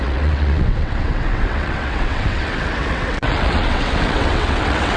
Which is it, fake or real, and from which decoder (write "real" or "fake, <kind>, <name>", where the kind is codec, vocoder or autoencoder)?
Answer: fake, vocoder, WaveNeXt